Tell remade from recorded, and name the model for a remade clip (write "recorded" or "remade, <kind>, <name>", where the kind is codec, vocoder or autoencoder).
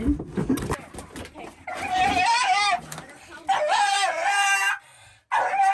recorded